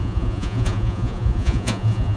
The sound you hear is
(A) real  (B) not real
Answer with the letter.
B